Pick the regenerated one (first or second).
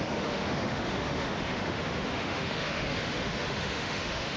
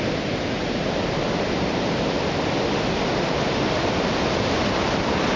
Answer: first